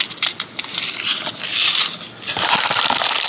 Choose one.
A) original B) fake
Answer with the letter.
A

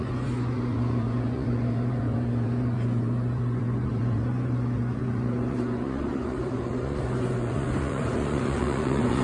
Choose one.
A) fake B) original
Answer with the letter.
A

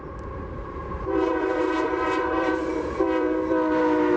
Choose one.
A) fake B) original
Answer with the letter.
A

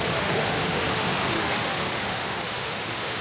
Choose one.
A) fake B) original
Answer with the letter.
A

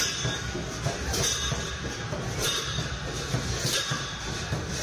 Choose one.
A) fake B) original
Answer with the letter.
B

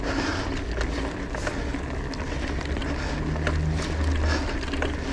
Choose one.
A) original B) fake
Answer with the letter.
A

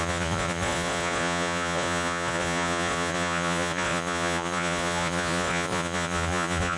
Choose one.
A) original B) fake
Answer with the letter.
B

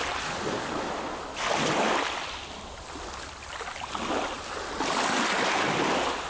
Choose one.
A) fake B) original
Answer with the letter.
B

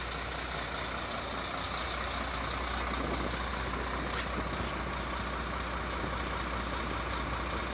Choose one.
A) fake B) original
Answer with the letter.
B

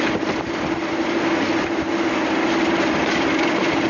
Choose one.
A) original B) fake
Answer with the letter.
A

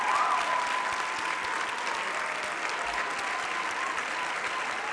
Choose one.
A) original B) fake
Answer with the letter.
A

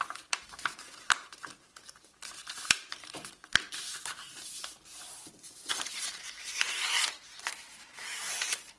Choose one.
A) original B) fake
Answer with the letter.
B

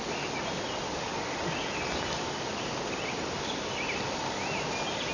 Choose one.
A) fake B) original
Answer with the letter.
B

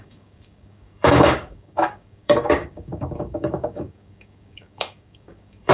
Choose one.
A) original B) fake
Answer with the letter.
B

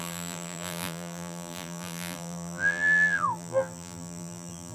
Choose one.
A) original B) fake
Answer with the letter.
B